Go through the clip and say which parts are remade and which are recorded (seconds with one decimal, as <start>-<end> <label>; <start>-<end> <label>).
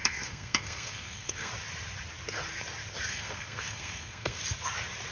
0.0-1.5 remade; 1.5-3.1 recorded; 3.1-4.4 remade; 4.4-5.1 recorded